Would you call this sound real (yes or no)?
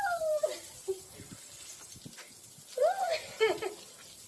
no